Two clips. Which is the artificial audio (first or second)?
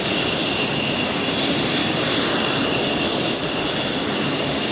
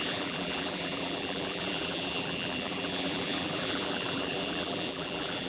second